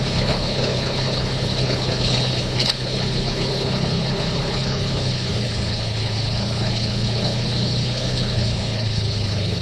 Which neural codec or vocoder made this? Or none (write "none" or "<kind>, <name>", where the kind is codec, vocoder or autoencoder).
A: codec, HILCodec